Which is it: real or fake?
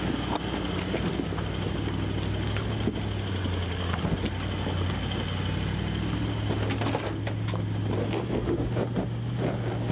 real